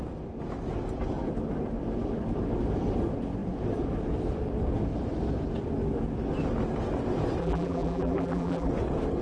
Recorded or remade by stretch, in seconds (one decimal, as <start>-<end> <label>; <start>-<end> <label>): 0.0-7.4 recorded; 7.4-8.7 remade; 8.7-9.2 recorded